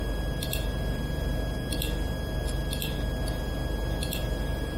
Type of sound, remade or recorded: recorded